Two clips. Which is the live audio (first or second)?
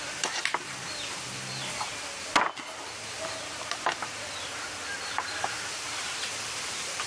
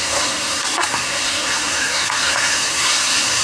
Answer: first